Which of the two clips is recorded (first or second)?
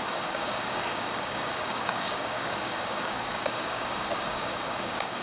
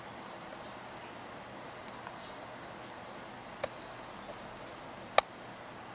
second